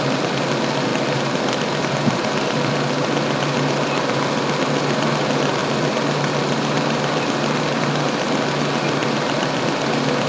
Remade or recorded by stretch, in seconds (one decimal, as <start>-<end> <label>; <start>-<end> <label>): 0.0-0.9 recorded; 0.9-1.8 remade; 1.8-5.6 recorded; 5.6-7.6 remade; 7.6-10.3 recorded